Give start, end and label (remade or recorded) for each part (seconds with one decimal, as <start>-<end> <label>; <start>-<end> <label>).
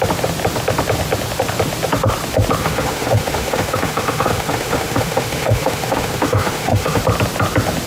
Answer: 0.0-2.6 recorded; 2.6-7.0 remade; 7.0-7.9 recorded